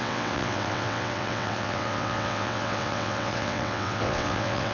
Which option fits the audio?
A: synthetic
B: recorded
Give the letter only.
A